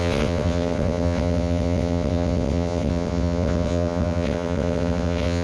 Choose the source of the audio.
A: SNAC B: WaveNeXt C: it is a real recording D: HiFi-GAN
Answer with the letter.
B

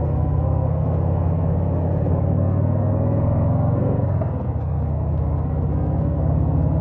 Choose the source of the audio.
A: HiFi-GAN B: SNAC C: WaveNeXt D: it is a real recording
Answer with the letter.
B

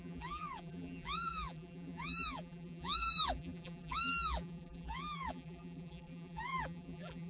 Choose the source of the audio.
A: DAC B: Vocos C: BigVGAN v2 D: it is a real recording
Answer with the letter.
C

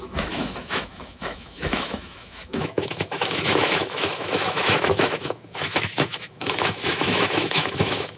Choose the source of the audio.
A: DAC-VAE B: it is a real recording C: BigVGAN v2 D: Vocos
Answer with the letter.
A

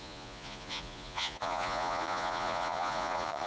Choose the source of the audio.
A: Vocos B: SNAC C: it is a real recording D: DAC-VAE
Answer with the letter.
A